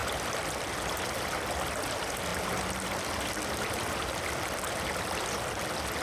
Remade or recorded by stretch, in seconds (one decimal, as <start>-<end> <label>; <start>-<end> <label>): 0.0-2.3 recorded; 2.3-5.6 remade; 5.6-6.0 recorded